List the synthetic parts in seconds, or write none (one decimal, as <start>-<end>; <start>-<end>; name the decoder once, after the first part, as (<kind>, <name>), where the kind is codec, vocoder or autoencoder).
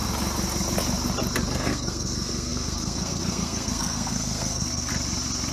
1.5-4.9 (codec, SNAC)